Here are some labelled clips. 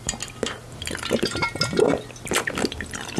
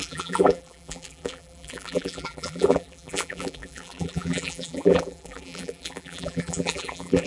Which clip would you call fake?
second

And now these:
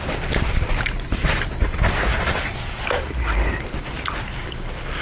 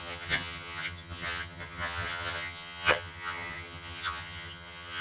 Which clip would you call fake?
second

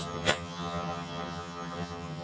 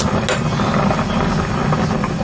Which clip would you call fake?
first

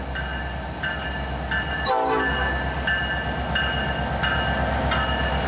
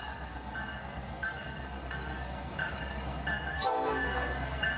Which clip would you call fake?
second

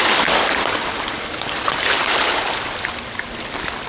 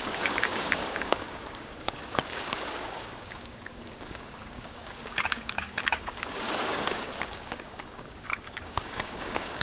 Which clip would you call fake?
second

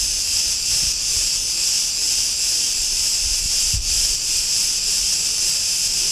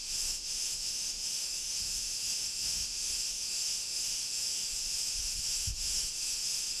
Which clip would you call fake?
second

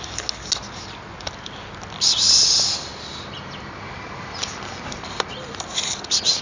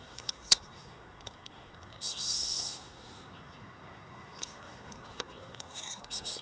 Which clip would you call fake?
second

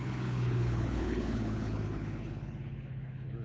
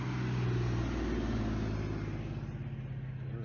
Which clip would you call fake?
first